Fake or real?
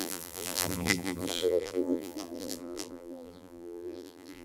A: fake